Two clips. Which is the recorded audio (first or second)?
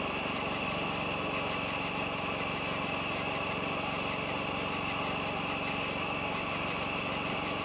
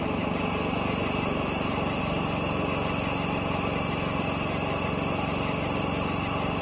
second